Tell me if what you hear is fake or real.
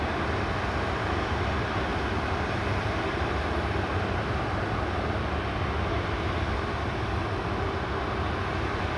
real